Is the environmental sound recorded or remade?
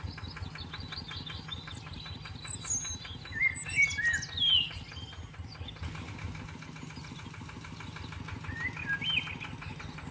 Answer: recorded